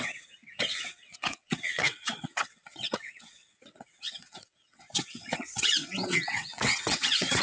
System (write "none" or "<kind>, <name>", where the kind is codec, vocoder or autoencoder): vocoder, WaveNeXt